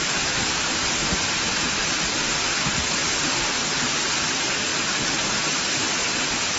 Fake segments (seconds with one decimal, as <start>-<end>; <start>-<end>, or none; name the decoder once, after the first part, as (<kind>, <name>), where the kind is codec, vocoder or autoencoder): none